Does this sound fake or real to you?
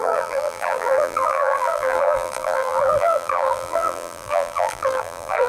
fake